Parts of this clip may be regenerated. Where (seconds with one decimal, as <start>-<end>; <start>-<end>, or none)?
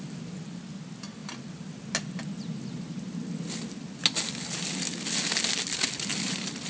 none